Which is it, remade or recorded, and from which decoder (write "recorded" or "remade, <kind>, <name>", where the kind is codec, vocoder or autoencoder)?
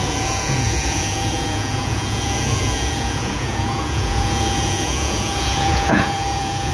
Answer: remade, vocoder, Vocos